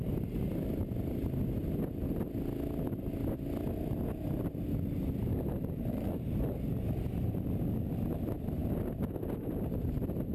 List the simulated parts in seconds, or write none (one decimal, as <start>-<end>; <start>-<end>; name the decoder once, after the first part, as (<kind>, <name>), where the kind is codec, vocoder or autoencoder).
none

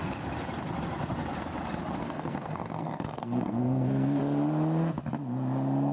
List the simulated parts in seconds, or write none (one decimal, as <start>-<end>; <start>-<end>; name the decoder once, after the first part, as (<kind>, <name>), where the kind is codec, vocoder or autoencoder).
2.0-4.2 (codec, SNAC)